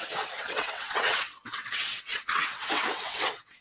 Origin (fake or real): fake